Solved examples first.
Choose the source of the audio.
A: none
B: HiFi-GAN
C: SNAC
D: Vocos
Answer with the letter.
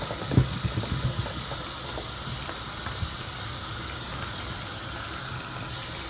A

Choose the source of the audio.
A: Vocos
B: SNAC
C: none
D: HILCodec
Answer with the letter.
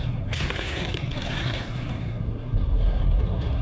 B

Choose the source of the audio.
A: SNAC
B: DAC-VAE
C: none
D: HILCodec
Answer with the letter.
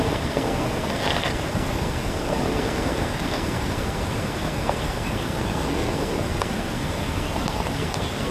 A